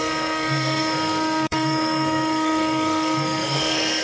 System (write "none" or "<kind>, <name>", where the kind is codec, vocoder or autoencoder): codec, SNAC